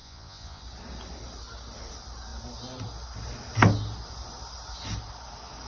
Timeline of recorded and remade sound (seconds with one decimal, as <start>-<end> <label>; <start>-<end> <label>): 0.0-0.6 remade; 0.6-5.7 recorded